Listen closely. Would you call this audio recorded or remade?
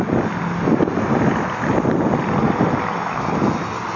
recorded